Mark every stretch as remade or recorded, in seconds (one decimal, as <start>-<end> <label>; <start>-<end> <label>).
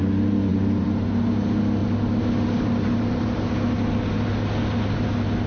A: 0.0-0.5 recorded; 0.5-1.3 remade; 1.3-1.8 recorded; 1.8-3.5 remade; 3.5-5.5 recorded